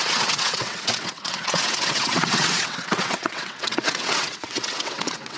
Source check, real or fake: fake